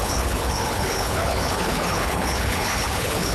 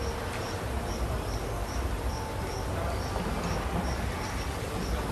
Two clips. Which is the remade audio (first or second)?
first